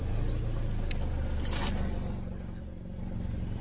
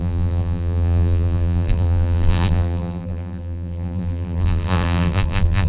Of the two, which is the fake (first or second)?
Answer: second